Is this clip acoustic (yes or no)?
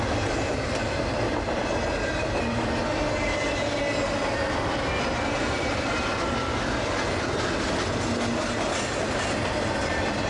yes